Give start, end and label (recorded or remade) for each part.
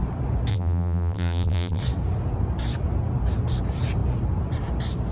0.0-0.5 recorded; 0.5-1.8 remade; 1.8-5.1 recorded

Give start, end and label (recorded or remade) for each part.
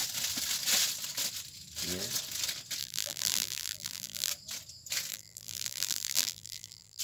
0.0-2.8 recorded; 2.8-4.3 remade; 4.3-5.1 recorded; 5.1-7.0 remade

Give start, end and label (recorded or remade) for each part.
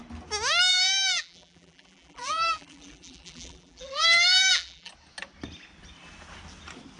0.0-0.7 recorded; 0.7-4.9 remade; 4.9-7.0 recorded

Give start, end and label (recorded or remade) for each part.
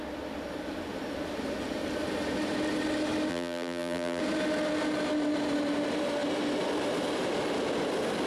0.0-3.3 recorded; 3.3-4.2 remade; 4.2-8.3 recorded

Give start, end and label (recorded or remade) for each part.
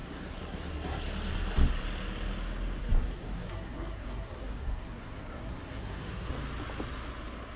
0.0-1.1 remade; 1.1-2.8 recorded; 2.8-6.3 remade; 6.3-7.6 recorded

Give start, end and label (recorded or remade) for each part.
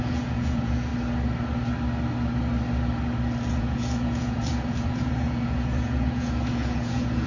0.0-0.9 remade; 0.9-3.5 recorded; 3.5-7.3 remade